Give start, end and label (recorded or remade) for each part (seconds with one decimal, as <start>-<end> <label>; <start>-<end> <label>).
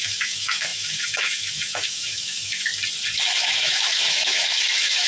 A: 0.0-2.7 remade; 2.7-3.2 recorded; 3.2-5.1 remade